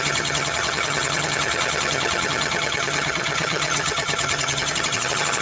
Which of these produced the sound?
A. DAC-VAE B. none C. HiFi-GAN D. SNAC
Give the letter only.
C